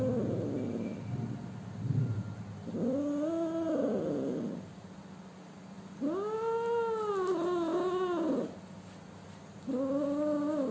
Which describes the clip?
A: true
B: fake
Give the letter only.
A